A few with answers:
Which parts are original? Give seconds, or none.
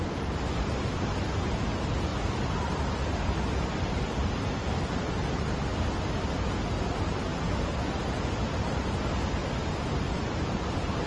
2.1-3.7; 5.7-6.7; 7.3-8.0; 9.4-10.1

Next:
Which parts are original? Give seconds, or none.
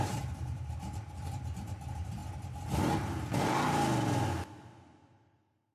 2.2-5.7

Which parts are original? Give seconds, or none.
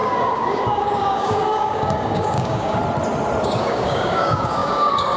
2.8-3.4